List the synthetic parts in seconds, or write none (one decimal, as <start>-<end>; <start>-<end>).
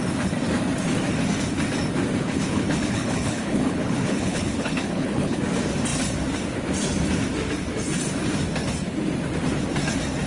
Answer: 2.2-5.4